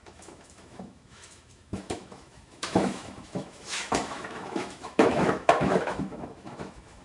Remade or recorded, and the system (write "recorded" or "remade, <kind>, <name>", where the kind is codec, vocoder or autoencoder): remade, autoencoder, DAC-VAE